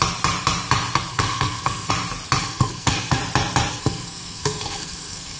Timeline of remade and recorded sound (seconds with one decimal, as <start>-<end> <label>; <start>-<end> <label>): 0.0-1.1 recorded; 1.1-1.9 remade; 1.9-2.4 recorded; 2.4-3.2 remade; 3.2-3.7 recorded; 3.7-5.4 remade